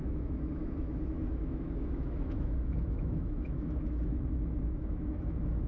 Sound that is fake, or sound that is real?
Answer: fake